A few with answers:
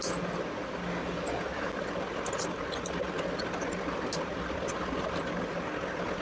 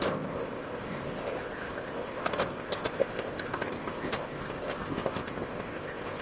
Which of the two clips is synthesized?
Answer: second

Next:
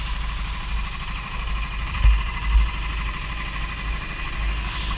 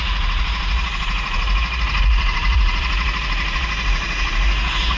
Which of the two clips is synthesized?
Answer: second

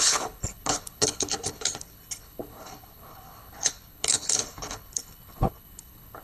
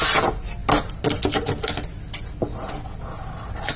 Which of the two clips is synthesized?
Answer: first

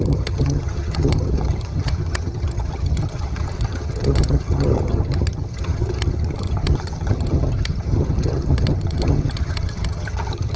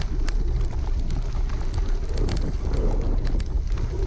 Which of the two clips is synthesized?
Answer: first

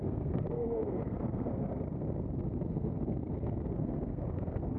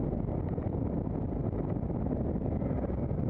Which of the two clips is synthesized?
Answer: first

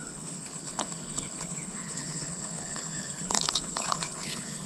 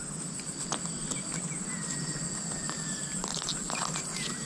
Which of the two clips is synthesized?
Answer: first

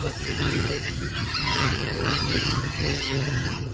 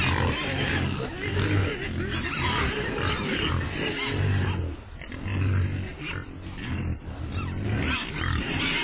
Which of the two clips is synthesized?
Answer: first